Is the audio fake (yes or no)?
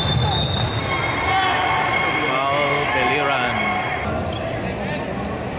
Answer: no